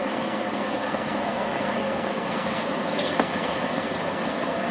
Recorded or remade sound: remade